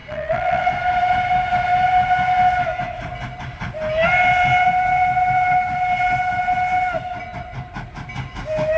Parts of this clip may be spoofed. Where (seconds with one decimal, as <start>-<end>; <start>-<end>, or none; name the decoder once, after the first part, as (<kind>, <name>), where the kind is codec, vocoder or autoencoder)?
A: 0.0-0.7 (vocoder, WaveNeXt)